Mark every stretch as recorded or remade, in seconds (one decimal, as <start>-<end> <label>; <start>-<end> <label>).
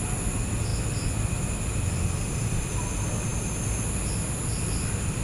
0.0-5.2 recorded